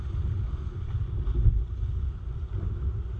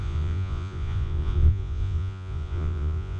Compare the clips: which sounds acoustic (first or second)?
first